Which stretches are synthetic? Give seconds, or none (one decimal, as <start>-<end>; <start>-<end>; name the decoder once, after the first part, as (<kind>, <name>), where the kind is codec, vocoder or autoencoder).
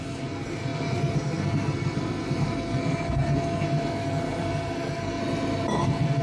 0.0-5.2 (codec, SNAC); 5.8-6.2